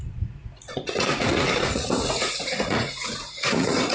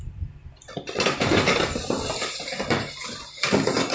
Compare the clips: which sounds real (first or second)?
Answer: second